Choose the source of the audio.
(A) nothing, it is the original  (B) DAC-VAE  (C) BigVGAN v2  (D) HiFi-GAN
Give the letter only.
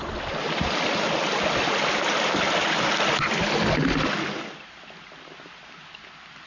A